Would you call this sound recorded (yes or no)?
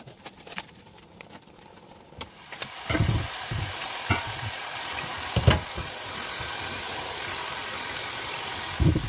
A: no